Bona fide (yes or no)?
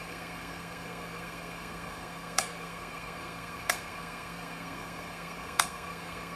no